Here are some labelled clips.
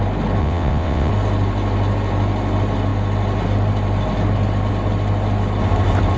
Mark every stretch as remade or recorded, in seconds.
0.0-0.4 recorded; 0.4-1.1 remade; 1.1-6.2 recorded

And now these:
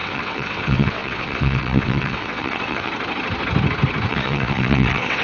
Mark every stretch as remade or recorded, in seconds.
0.0-2.9 remade; 2.9-4.1 recorded; 4.1-5.2 remade

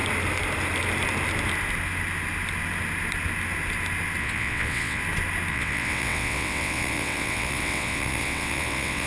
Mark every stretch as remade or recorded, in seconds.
0.0-4.2 recorded; 4.2-5.0 remade; 5.0-5.5 recorded; 5.5-9.1 remade

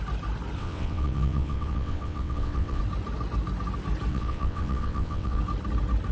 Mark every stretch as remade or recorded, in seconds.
0.0-0.6 recorded; 0.6-2.8 remade; 2.8-4.1 recorded; 4.1-5.4 remade; 5.4-6.1 recorded